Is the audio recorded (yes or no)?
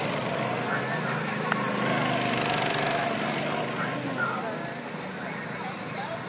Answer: yes